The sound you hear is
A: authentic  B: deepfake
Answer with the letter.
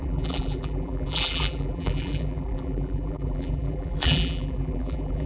B